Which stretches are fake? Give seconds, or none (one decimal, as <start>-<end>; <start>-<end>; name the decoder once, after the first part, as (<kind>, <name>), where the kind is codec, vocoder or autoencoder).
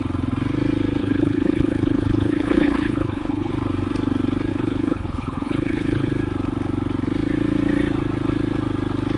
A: 1.0-3.5 (codec, HILCodec); 4.5-6.1